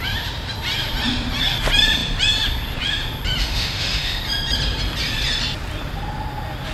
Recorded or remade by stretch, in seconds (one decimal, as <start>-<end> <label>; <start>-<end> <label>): 0.0-3.4 recorded; 3.4-4.2 remade; 4.2-6.7 recorded